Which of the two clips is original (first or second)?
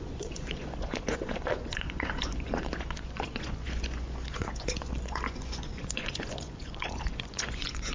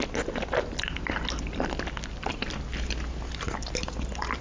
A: second